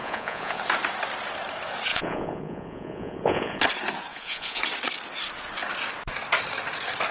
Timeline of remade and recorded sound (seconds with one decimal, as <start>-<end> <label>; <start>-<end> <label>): 0.0-0.6 remade; 0.6-1.9 recorded; 1.9-3.6 remade; 3.6-4.1 recorded; 4.1-4.6 remade; 4.6-7.1 recorded